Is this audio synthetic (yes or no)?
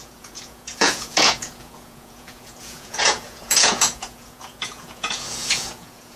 yes